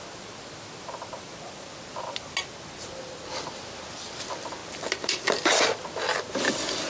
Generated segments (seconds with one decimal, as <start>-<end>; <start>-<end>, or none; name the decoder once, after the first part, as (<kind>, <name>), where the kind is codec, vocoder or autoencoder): none